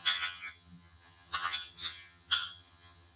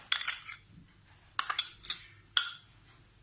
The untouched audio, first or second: second